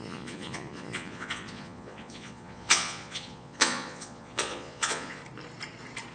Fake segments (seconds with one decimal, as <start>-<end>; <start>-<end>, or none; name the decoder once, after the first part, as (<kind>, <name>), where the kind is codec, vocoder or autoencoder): 0.0-5.2 (vocoder, Vocos)